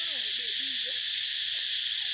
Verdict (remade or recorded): recorded